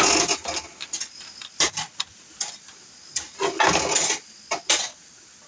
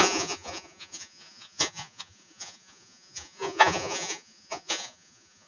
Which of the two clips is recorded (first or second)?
first